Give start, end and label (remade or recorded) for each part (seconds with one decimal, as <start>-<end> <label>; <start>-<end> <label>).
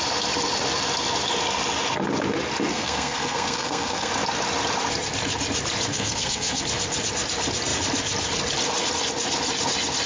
0.0-2.7 recorded; 2.7-4.1 remade; 4.1-5.9 recorded; 5.9-6.6 remade; 6.6-10.1 recorded